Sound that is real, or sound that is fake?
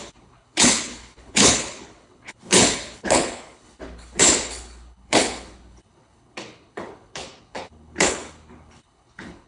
fake